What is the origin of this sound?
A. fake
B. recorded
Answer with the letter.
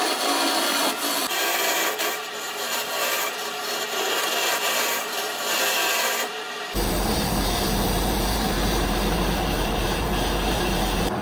A